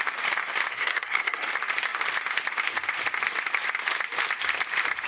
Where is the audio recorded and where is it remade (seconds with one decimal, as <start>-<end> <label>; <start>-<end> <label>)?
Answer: 0.0-0.7 recorded; 0.7-1.5 remade; 1.5-5.1 recorded